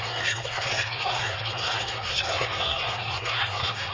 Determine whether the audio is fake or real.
fake